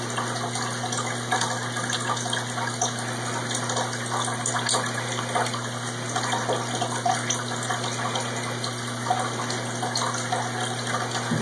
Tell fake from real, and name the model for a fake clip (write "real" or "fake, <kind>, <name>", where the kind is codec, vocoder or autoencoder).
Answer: real